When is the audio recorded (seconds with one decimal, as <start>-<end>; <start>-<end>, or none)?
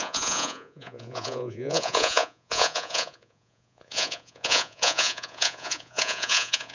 none